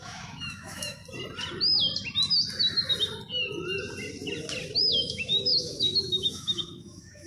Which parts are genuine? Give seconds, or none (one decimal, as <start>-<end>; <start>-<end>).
1.0-4.8